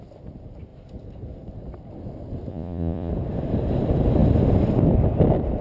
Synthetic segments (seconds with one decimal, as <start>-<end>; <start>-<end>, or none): 2.5-3.1

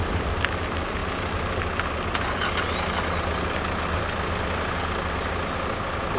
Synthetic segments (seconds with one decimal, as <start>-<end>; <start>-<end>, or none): none

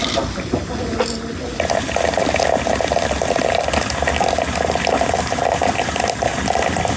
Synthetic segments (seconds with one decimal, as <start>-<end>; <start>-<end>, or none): none